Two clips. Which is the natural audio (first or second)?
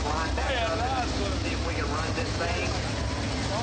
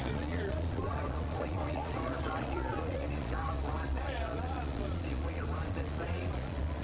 first